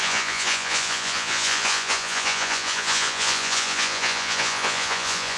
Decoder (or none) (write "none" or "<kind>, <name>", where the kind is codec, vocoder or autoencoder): vocoder, Vocos